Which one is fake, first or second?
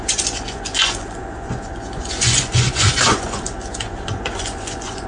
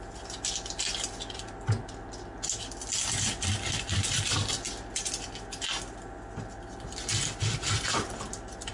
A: first